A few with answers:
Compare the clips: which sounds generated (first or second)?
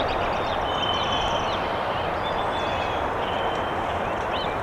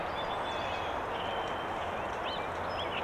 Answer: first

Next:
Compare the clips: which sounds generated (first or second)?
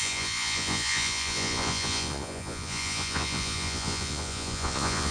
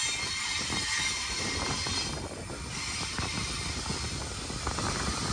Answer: first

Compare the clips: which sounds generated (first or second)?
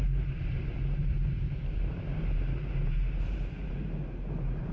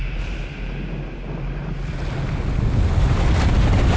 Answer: first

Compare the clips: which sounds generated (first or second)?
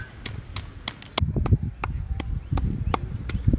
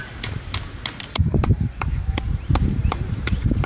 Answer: second